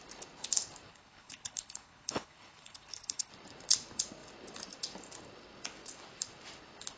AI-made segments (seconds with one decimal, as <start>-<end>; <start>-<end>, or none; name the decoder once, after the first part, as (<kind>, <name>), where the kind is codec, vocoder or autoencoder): 0.9-3.3 (codec, HILCodec)